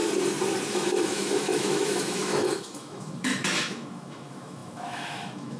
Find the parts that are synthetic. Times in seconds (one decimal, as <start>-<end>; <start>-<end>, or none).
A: 0.7-5.6